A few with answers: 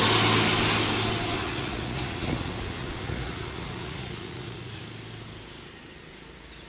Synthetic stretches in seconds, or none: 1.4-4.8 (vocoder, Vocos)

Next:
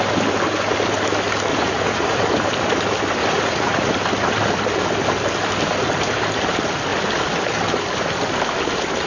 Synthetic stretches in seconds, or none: 1.5-2.2 (vocoder, Vocos); 3.2-3.9

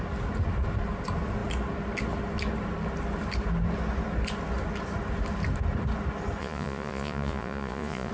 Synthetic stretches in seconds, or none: 6.4-8.1 (vocoder, Vocos)